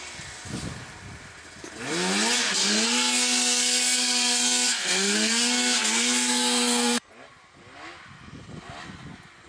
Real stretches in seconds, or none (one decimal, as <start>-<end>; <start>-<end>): 0.0-2.6; 7.1-9.5